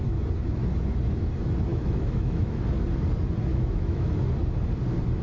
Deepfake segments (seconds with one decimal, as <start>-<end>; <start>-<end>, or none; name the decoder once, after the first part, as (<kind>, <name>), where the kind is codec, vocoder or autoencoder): 1.7-2.6 (autoencoder, DAC-VAE); 3.5-4.3